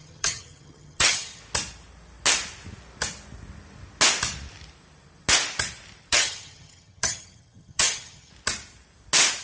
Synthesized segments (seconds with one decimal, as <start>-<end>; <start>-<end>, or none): 0.0-1.4; 6.1-8.3